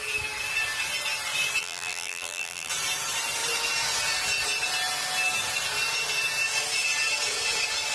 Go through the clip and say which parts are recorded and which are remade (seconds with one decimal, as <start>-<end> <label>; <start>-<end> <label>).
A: 0.0-1.6 recorded; 1.6-2.7 remade; 2.7-7.9 recorded